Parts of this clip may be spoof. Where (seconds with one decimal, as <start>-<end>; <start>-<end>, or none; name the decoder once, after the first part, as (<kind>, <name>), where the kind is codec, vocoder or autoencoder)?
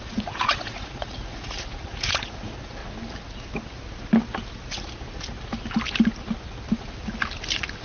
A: 0.0-2.8 (vocoder, Vocos)